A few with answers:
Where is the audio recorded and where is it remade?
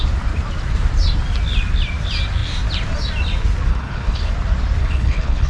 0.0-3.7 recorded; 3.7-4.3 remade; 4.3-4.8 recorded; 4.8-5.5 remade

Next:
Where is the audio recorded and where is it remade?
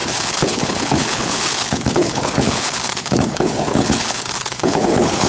0.0-5.3 remade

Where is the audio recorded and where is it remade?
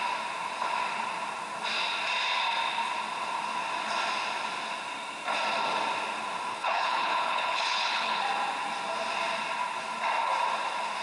0.0-6.5 recorded; 6.5-8.2 remade; 8.2-11.0 recorded